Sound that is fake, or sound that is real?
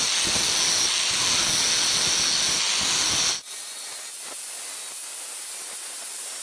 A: real